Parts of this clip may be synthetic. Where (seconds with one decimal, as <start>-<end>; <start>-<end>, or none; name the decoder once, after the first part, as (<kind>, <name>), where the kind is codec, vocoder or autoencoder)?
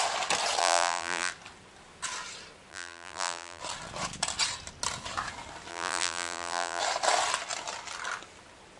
0.6-1.3 (vocoder, BigVGAN v2); 2.7-3.6; 5.7-6.8